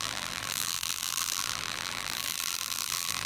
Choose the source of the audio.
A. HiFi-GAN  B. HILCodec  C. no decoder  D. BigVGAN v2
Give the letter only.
D